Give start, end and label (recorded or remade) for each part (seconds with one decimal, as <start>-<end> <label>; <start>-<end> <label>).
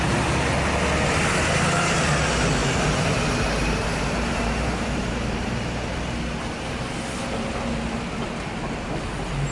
0.0-3.8 recorded; 3.8-6.0 remade; 6.0-9.5 recorded